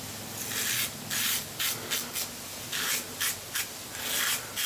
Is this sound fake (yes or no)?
no